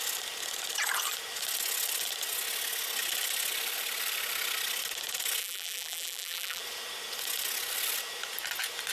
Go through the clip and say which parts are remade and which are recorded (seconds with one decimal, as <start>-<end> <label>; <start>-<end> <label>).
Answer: 0.0-5.4 recorded; 5.4-6.6 remade; 6.6-8.9 recorded